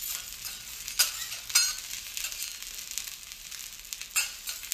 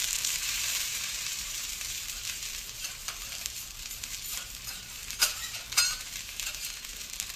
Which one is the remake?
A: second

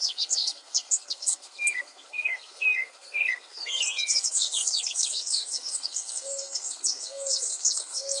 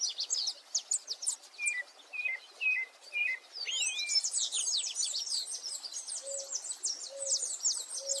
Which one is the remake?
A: first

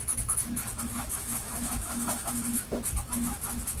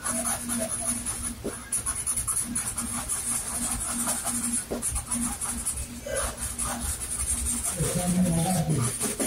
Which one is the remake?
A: first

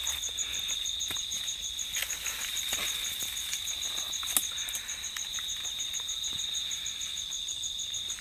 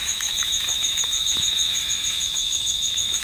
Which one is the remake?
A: second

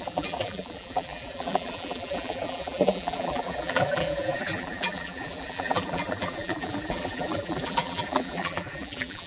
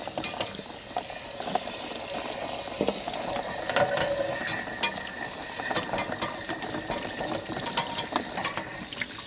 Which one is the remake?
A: first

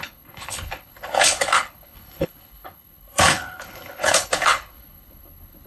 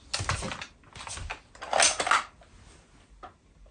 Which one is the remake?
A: first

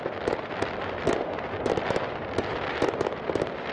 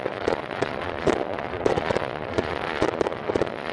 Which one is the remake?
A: second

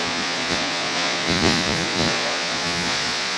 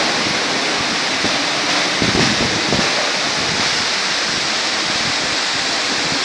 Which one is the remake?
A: first